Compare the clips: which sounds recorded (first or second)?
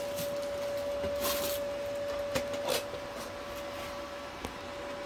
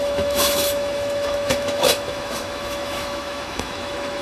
first